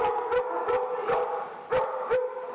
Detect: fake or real real